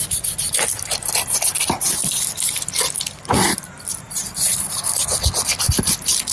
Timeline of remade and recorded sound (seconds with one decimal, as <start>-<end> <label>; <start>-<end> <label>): 0.0-6.3 recorded